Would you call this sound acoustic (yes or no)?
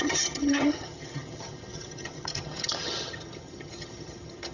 no